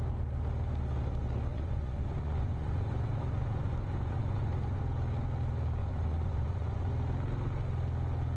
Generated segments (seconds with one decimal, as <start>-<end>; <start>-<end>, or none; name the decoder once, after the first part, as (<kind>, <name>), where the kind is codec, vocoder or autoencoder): 1.5-4.8 (vocoder, Vocos); 5.8-6.9